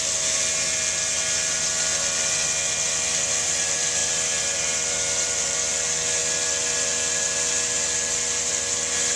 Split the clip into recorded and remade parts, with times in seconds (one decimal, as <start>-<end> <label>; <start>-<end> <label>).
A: 0.0-4.0 recorded; 4.0-5.7 remade; 5.7-9.2 recorded